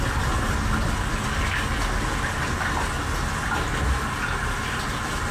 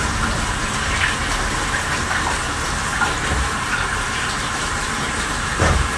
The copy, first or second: second